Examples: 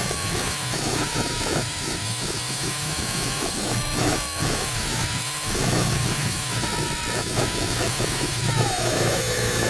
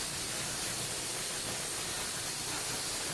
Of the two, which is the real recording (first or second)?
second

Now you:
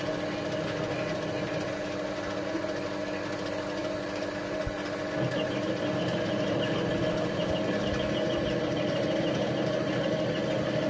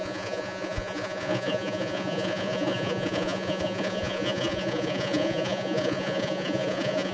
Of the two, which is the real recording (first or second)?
first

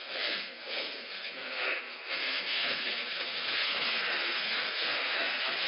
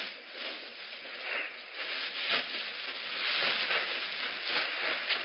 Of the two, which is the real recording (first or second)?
second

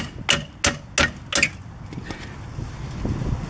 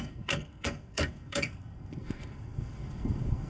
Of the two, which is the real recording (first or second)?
first